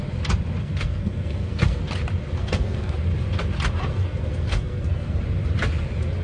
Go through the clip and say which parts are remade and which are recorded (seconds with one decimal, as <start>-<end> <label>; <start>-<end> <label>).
0.0-0.6 recorded; 0.6-1.8 remade; 1.8-2.4 recorded; 2.4-2.9 remade; 2.9-3.9 recorded; 3.9-5.2 remade; 5.2-6.2 recorded

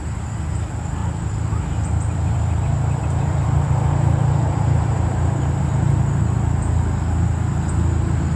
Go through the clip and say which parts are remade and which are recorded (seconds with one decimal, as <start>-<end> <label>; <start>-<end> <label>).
0.0-1.0 recorded; 1.0-6.0 remade; 6.0-8.4 recorded